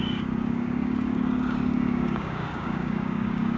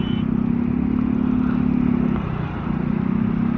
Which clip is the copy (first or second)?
first